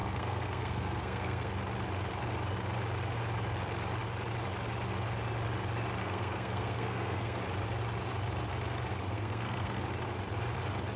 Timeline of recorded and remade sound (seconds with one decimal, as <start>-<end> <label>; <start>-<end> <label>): 0.0-1.5 remade; 1.5-6.0 recorded; 6.0-7.4 remade; 7.4-9.1 recorded; 9.1-9.8 remade; 9.8-11.0 recorded